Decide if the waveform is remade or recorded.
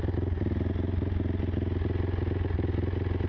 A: recorded